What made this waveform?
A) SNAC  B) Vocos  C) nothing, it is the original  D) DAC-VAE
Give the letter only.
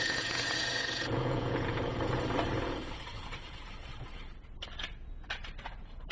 B